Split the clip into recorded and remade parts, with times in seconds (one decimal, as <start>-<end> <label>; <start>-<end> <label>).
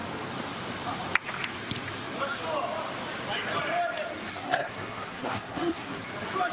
0.0-4.3 recorded; 4.3-6.1 remade; 6.1-6.5 recorded